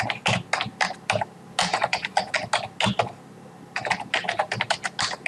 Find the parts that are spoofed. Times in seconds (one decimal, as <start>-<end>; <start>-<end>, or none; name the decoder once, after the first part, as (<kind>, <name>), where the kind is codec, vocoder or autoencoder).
1.7-2.3 (vocoder, Vocos)